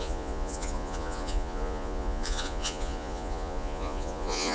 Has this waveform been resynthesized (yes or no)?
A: yes